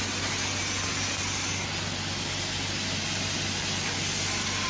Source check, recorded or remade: recorded